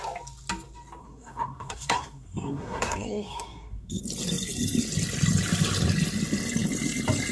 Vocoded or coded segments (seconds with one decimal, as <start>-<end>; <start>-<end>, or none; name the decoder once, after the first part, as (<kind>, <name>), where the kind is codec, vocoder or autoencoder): 1.0-4.0 (codec, SNAC)